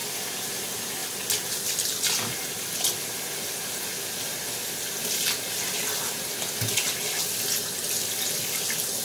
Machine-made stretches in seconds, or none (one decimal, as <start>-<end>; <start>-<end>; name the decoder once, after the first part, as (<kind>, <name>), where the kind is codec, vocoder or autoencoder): none